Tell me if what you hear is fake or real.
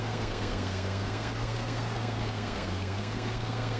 fake